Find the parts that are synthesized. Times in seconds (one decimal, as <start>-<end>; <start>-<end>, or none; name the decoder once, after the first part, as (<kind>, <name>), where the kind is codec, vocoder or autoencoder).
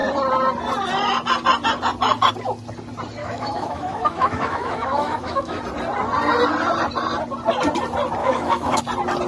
3.2-5.6 (autoencoder, DAC-VAE); 8.2-8.8